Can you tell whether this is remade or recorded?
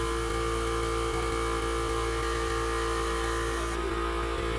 recorded